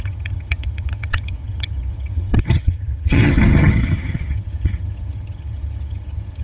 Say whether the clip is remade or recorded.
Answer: remade